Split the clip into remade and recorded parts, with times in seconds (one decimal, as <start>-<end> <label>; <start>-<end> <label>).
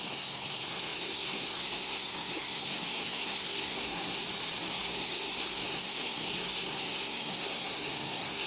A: 0.0-4.2 remade; 4.2-4.7 recorded; 4.7-8.5 remade